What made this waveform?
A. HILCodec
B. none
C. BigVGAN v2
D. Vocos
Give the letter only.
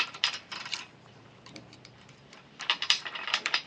C